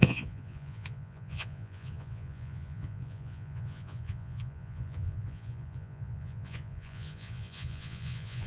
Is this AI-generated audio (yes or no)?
yes